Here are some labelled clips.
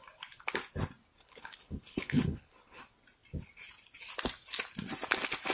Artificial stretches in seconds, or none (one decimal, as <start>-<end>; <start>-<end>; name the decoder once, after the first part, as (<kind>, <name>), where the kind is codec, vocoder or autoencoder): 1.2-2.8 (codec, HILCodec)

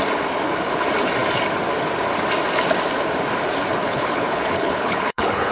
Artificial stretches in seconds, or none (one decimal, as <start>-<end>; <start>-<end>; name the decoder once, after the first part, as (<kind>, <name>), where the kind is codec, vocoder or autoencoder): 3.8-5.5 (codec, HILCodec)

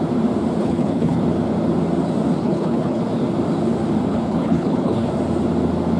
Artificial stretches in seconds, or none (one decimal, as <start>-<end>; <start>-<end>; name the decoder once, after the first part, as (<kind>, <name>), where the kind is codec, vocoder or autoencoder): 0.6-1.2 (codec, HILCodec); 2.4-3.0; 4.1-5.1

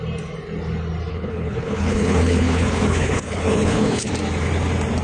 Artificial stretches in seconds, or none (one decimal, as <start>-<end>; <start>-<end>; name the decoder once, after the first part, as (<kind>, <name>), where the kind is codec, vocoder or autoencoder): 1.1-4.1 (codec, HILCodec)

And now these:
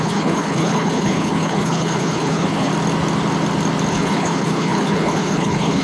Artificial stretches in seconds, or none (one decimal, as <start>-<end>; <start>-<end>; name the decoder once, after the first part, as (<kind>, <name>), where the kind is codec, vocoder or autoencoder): 0.0-2.7 (codec, HILCodec); 3.9-5.8

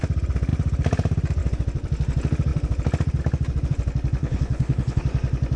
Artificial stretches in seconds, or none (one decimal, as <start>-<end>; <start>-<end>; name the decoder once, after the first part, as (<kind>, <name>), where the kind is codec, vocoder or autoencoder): 4.2-5.0 (codec, HILCodec)